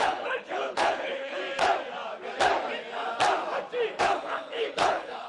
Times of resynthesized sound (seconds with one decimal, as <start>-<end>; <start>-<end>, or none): 0.0-1.4; 4.0-5.3